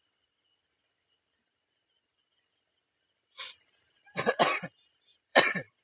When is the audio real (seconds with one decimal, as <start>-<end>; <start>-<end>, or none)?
0.0-3.5; 4.4-5.1